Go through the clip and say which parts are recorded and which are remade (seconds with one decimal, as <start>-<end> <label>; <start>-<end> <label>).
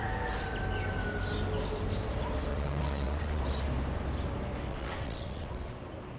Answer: 0.0-2.5 recorded; 2.5-3.4 remade; 3.4-4.7 recorded; 4.7-5.7 remade; 5.7-6.2 recorded